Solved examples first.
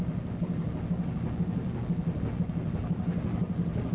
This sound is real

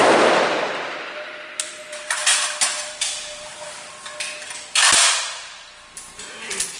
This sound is real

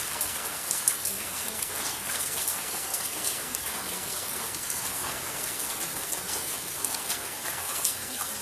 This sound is fake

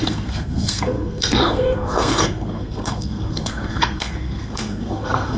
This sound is fake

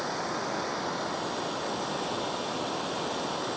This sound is real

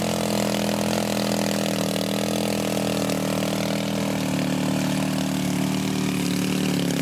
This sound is real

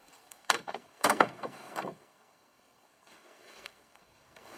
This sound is fake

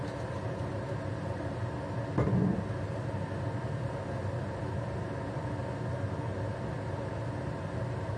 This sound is real